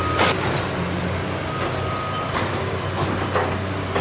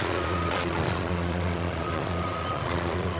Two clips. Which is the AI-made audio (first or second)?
second